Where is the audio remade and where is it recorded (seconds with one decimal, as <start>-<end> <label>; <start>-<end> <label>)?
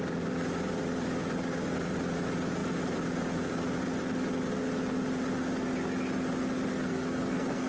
0.0-6.7 recorded; 6.7-7.7 remade